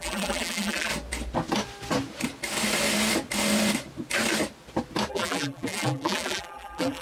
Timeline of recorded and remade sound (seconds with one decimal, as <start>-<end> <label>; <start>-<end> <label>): 0.0-0.9 remade; 0.9-5.1 recorded; 5.1-7.0 remade